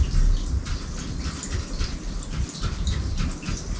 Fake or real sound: real